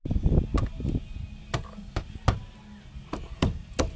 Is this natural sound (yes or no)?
yes